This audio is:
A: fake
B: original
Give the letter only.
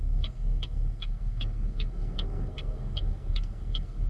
A